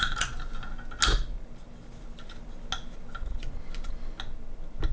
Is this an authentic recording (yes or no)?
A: yes